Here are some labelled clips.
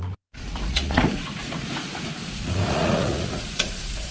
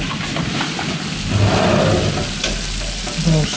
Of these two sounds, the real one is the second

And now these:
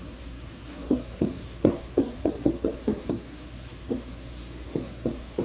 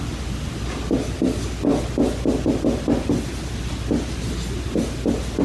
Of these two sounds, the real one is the second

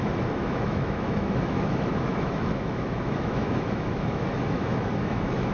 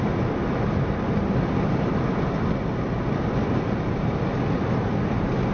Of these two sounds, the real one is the second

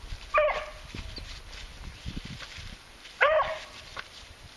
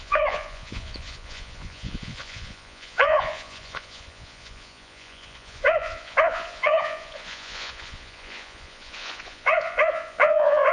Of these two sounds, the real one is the first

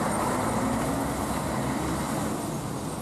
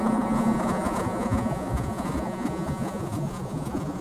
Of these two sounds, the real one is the first